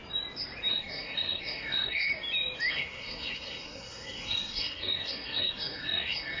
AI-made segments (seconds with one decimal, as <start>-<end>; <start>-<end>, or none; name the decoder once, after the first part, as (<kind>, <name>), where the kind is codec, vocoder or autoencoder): 0.7-2.1 (codec, SNAC); 2.7-6.4